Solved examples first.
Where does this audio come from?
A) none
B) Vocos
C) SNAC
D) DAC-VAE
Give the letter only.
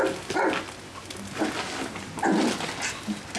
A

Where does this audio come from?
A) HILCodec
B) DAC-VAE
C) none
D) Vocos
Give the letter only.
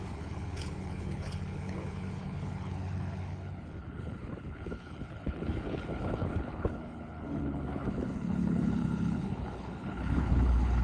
A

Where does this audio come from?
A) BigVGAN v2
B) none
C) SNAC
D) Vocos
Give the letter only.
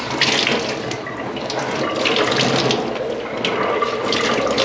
B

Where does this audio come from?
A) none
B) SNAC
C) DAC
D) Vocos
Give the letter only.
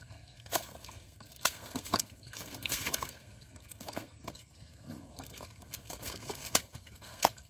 B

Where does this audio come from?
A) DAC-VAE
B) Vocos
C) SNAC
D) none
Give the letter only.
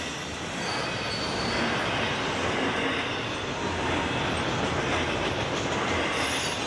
D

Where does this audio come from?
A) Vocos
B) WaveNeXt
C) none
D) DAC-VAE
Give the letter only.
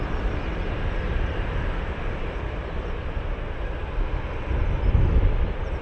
C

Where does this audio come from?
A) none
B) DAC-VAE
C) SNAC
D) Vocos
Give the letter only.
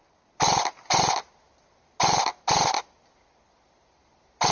A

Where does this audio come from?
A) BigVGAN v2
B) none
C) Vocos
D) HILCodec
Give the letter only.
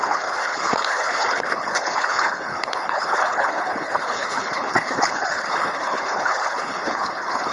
D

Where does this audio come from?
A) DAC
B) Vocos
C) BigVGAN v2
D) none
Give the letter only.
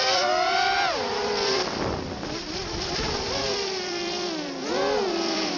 C